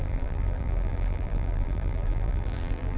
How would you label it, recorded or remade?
remade